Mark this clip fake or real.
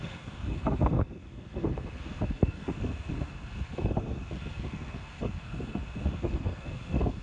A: fake